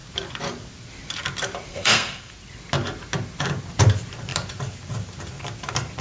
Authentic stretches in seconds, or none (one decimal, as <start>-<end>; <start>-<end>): 0.0-1.7; 2.3-6.0

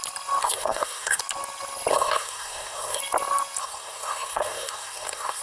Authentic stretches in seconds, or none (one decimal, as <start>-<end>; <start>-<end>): 0.0-0.4; 1.2-1.9; 3.0-3.6

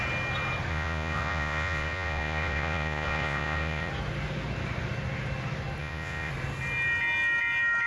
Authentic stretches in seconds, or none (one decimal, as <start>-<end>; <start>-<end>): 0.0-0.7; 3.9-5.8; 6.3-7.9